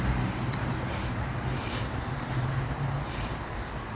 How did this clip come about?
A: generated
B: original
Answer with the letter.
A